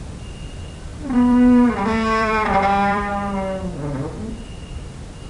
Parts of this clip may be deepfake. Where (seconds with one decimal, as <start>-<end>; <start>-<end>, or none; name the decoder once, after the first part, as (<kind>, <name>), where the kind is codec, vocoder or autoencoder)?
0.0-3.1 (vocoder, BigVGAN v2); 4.3-5.3